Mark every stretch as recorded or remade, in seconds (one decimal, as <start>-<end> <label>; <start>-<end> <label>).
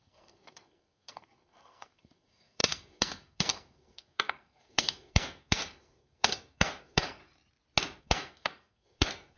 0.0-7.2 remade; 7.2-8.0 recorded; 8.0-9.4 remade